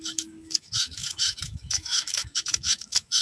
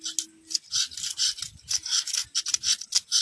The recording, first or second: second